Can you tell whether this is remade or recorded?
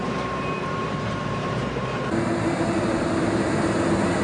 remade